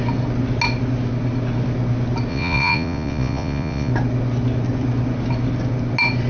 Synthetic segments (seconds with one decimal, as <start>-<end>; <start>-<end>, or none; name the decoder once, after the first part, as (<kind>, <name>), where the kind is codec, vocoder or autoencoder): 2.3-3.9 (vocoder, Vocos)